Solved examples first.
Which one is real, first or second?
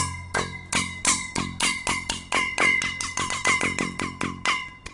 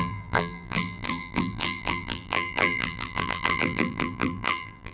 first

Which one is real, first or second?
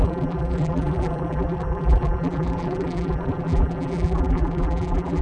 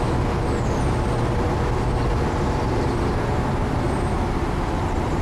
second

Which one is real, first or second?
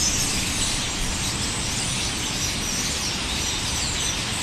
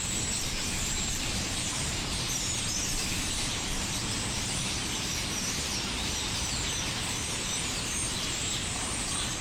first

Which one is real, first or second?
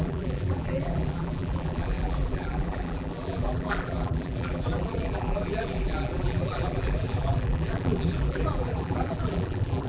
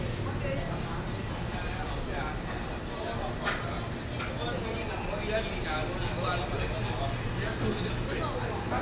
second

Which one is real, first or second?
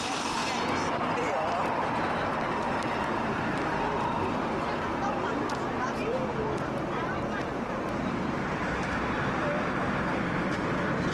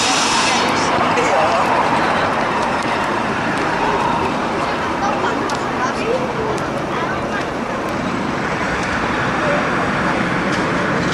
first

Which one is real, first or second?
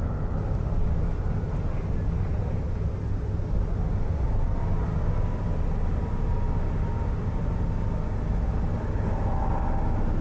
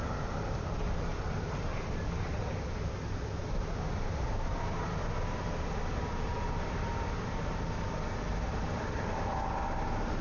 first